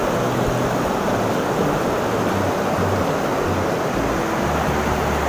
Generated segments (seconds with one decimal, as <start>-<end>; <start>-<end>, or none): none